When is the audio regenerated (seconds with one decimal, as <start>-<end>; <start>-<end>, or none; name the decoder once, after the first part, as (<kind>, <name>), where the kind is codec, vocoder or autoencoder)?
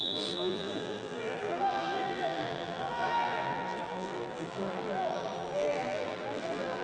0.0-6.8 (vocoder, BigVGAN v2)